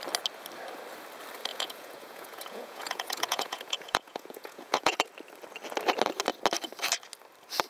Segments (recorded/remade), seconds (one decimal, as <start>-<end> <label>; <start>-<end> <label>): 0.0-1.5 recorded; 1.5-5.1 remade; 5.1-7.7 recorded